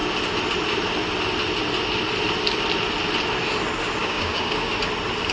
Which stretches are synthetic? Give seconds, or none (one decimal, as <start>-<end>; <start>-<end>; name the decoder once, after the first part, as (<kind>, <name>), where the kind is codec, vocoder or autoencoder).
4.0-4.7 (codec, DAC)